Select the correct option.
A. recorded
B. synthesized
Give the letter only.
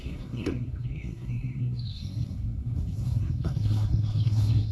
B